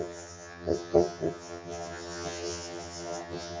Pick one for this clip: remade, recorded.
remade